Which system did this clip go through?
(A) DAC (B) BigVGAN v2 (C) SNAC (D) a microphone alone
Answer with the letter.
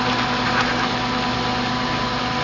D